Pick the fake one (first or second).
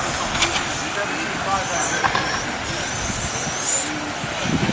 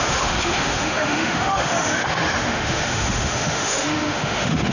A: second